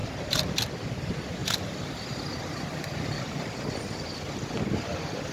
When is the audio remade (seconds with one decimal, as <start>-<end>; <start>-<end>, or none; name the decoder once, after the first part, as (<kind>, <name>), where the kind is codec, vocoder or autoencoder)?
0.0-0.6 (vocoder, BigVGAN v2); 1.4-4.6